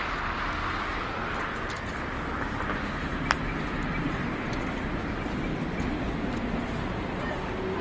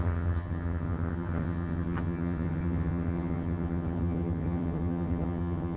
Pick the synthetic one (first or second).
second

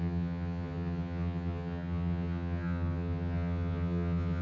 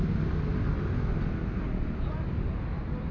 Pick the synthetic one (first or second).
first